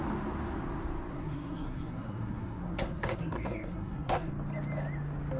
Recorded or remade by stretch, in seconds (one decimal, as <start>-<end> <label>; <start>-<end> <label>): 0.0-1.1 recorded; 1.1-4.3 remade; 4.3-5.4 recorded